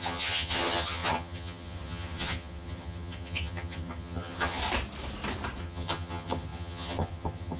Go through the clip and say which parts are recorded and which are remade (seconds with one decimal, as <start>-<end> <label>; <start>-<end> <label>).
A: 0.0-4.6 remade; 4.6-5.6 recorded; 5.6-7.6 remade